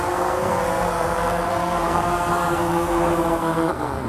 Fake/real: fake